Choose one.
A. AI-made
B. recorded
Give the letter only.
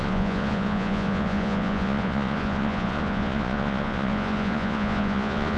A